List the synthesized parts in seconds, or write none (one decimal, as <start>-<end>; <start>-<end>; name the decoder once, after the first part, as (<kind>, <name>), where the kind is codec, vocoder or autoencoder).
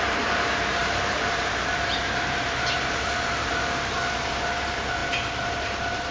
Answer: 0.0-6.1 (vocoder, BigVGAN v2)